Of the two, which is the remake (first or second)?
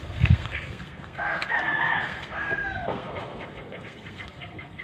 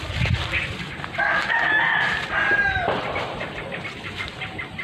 first